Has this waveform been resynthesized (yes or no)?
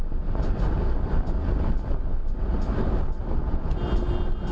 no